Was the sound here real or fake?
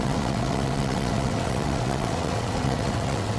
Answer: fake